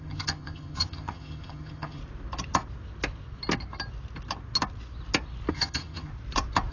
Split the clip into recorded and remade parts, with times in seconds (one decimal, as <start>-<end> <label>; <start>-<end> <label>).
0.0-2.0 remade; 2.0-5.5 recorded; 5.5-6.1 remade; 6.1-6.7 recorded